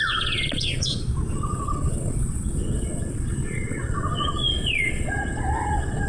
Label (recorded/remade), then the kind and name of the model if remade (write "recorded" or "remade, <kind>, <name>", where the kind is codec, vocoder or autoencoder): remade, vocoder, Vocos